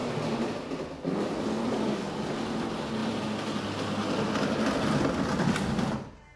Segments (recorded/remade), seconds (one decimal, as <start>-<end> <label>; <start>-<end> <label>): 0.0-6.4 recorded